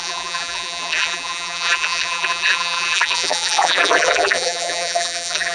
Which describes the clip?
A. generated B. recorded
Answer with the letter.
A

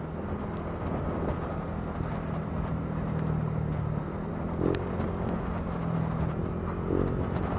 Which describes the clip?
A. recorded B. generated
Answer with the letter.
A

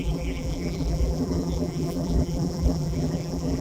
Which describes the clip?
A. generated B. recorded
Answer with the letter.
A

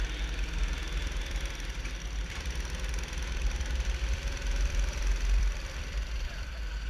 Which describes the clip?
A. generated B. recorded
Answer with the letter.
A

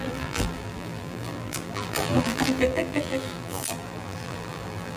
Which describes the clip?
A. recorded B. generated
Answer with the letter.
B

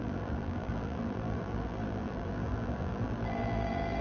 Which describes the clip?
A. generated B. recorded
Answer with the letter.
A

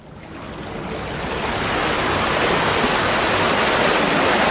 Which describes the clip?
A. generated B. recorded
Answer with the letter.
B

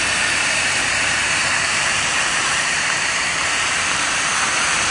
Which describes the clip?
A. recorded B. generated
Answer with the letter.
B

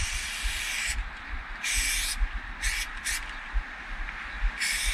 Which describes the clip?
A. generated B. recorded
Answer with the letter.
A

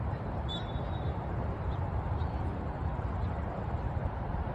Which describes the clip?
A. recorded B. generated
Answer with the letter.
B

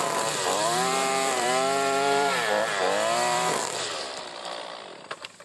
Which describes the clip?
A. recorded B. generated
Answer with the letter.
B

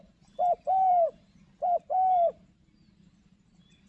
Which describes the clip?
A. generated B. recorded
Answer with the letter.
A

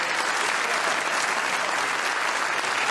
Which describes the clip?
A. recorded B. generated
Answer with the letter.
A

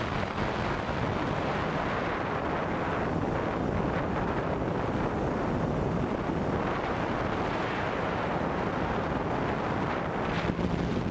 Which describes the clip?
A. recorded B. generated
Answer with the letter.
A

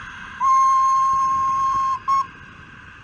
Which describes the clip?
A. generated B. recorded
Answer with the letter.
A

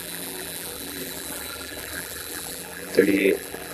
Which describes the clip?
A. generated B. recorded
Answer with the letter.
A